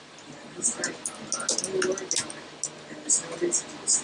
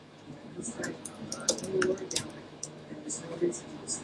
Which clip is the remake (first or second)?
second